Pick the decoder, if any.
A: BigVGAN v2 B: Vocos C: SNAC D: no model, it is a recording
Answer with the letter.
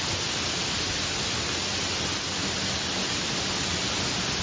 D